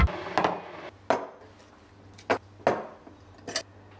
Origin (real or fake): real